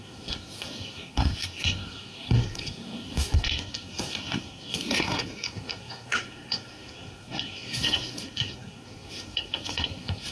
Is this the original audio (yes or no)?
no